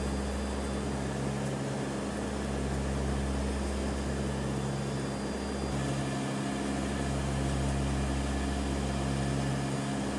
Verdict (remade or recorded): recorded